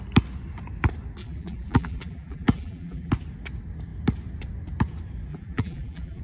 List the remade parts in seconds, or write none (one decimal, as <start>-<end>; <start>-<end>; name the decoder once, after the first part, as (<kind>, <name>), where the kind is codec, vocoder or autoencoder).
1.2-3.1 (vocoder, BigVGAN v2); 5.3-6.2